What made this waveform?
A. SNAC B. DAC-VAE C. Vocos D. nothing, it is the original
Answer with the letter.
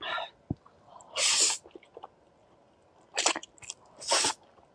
D